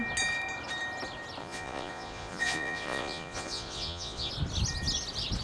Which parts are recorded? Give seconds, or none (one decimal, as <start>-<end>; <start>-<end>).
0.0-1.4; 4.3-5.4